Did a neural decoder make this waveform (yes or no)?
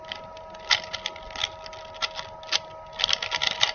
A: no